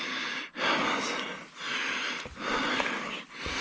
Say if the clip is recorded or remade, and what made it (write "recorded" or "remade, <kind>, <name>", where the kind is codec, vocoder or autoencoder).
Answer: recorded